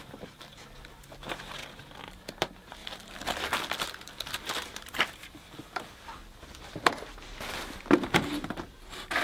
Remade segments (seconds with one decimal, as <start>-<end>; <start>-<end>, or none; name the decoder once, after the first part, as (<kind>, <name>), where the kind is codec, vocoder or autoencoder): 1.6-2.2 (vocoder, BigVGAN v2); 2.8-5.0